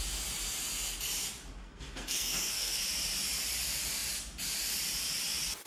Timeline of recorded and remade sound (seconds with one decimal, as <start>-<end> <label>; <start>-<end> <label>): 0.0-1.6 recorded; 1.6-2.8 remade; 2.8-5.7 recorded